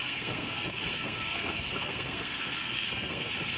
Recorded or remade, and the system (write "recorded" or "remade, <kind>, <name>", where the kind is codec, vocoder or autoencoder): remade, codec, SNAC